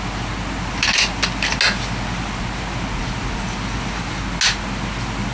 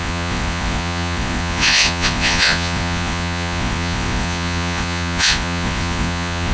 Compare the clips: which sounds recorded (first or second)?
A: first